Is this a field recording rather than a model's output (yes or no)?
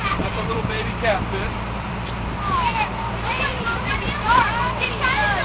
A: no